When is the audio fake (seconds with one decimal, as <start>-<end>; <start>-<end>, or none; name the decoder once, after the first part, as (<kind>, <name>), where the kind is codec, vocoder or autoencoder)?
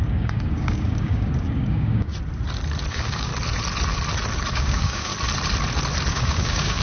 0.0-2.1 (codec, DAC); 2.9-3.3; 4.5-5.1; 6.1-6.8